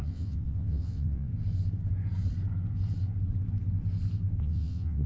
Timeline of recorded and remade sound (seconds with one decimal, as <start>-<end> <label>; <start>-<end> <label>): 0.0-1.3 remade; 1.3-4.4 recorded; 4.4-5.1 remade